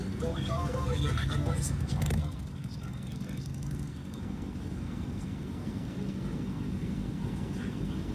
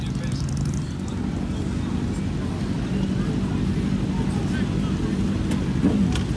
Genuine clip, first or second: second